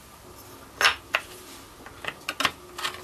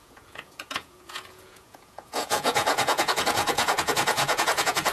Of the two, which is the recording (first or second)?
first